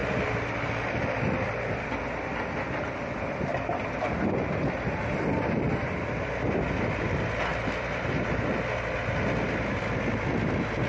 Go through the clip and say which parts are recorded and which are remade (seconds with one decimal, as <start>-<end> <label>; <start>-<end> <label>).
0.0-2.3 remade; 2.3-3.5 recorded; 3.5-5.0 remade; 5.0-7.5 recorded; 7.5-8.4 remade; 8.4-10.9 recorded